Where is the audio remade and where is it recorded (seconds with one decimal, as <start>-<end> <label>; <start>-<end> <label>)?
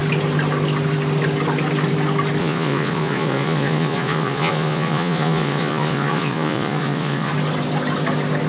0.0-2.4 recorded; 2.4-7.3 remade; 7.3-8.5 recorded